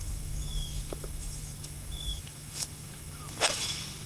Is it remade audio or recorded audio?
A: remade